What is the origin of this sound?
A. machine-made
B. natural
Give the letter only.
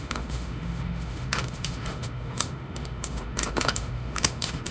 A